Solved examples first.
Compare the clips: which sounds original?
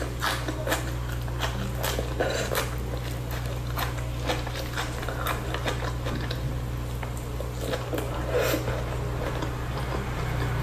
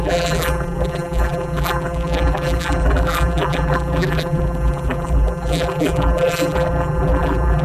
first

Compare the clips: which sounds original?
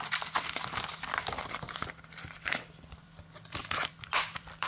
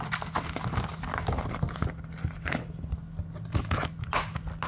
second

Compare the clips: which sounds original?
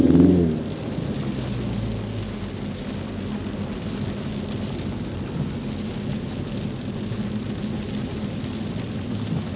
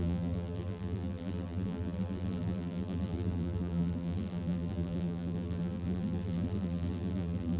first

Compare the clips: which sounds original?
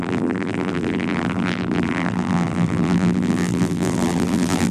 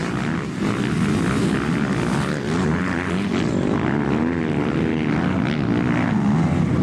second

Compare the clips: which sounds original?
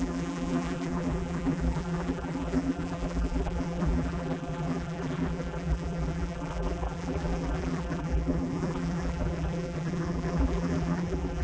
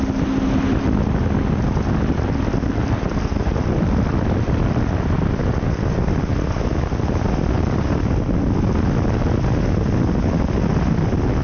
second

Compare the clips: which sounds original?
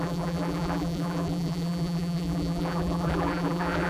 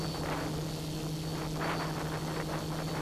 second